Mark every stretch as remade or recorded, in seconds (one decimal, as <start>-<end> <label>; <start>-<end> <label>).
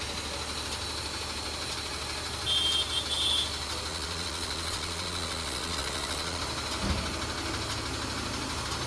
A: 0.0-3.9 recorded; 3.9-6.4 remade; 6.4-8.9 recorded